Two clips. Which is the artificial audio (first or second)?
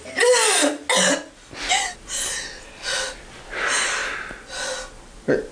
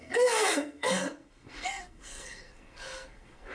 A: second